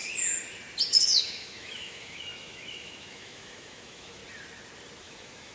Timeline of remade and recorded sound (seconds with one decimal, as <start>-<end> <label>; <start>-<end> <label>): 0.0-1.2 recorded; 1.2-4.2 remade; 4.2-5.0 recorded; 5.0-5.5 remade